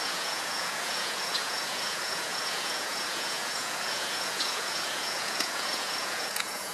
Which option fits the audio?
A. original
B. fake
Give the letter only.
B